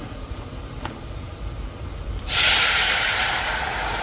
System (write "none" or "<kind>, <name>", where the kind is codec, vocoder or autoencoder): vocoder, BigVGAN v2